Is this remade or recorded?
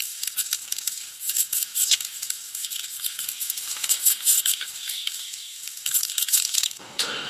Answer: remade